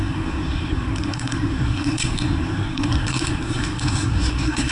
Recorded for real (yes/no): no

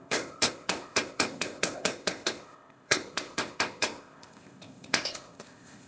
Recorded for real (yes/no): no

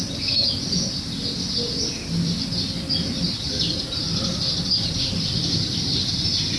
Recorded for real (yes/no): yes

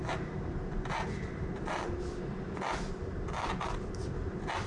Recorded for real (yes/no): yes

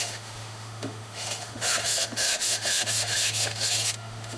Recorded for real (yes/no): no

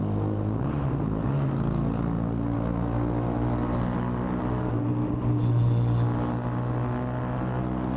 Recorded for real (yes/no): yes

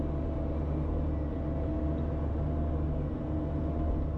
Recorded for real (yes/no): yes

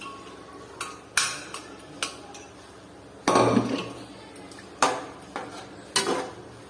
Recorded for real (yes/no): yes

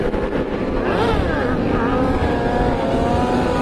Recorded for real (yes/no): yes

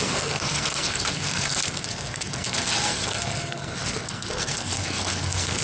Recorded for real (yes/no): no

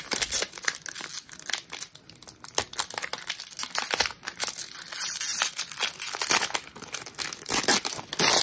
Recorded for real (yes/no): yes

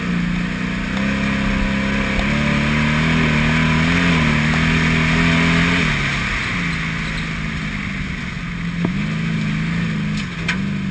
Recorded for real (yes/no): yes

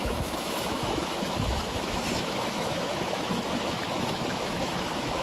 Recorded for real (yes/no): no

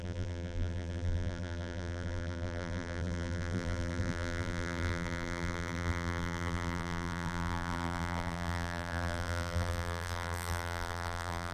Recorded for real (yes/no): no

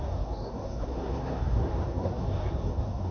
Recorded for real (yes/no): no